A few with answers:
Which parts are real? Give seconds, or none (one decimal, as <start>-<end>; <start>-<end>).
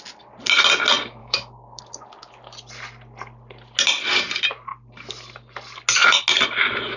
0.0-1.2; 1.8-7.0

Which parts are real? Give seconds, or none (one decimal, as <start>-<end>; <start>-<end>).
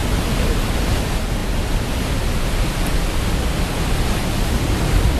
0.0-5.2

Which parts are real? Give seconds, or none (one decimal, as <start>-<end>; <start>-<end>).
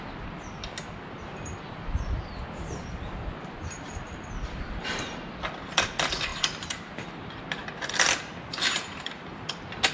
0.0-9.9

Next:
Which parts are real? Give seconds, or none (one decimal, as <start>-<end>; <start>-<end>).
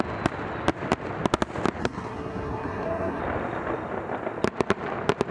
0.0-1.8; 3.2-5.3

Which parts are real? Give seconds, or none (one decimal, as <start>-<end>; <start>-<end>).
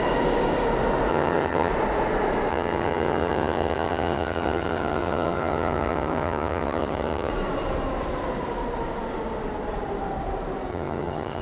0.0-1.1; 1.7-2.5; 7.3-10.7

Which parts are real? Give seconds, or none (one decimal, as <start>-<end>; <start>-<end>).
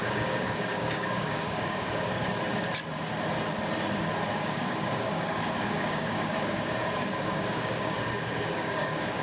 2.2-4.3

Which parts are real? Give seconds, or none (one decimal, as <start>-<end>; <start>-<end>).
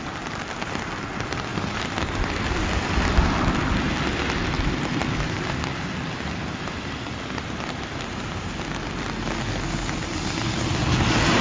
0.0-11.4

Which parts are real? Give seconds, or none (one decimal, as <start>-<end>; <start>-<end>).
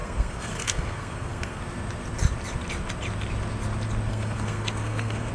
1.6-4.1